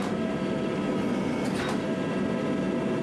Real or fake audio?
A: real